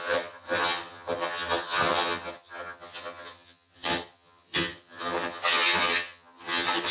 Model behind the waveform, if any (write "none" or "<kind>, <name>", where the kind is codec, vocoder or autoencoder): vocoder, HiFi-GAN